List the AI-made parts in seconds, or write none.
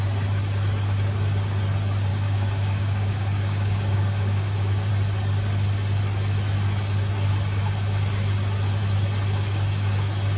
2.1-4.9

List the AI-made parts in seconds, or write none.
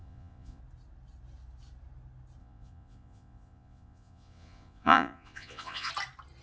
0.0-0.6; 2.4-5.9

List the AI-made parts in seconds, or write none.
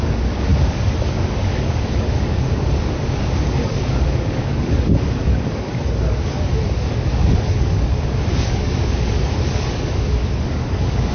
0.0-11.1